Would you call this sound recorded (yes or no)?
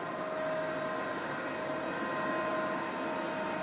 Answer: yes